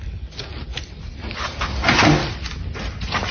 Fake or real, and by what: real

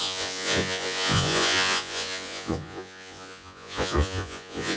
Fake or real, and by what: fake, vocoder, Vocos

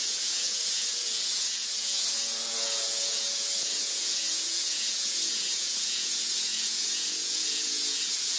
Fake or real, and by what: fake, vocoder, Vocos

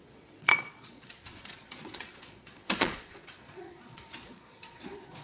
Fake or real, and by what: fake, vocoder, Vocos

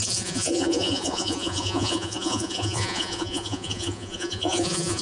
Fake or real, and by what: fake, vocoder, Vocos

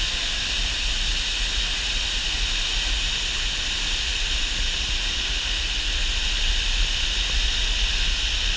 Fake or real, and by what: real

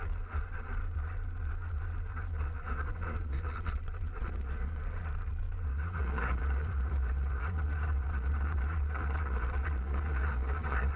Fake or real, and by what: fake, vocoder, Vocos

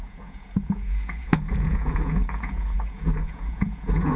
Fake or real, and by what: fake, vocoder, Vocos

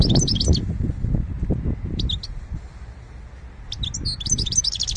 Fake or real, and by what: real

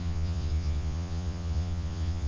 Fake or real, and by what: fake, vocoder, Vocos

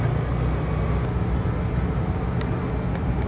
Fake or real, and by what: real